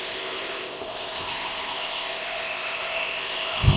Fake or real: fake